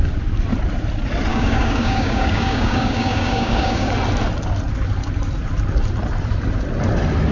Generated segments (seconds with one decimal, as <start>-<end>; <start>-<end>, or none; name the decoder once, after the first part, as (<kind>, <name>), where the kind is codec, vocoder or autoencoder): 1.3-3.9 (codec, DAC)

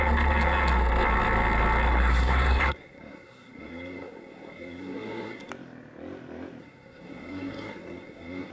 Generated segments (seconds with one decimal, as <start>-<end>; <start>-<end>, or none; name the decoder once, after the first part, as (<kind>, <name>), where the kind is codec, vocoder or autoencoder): 1.9-5.5 (codec, SNAC); 6.6-8.5